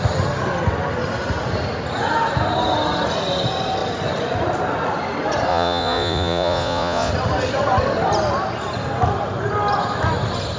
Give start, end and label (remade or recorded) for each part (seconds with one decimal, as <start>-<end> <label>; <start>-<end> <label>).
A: 0.0-5.5 recorded; 5.5-7.1 remade; 7.1-10.6 recorded